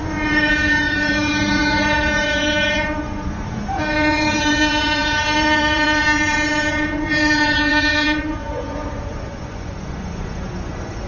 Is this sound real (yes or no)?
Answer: no